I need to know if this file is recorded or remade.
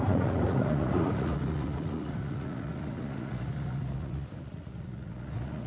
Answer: remade